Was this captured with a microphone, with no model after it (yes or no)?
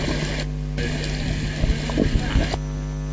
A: yes